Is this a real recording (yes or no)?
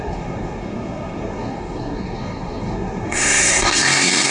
no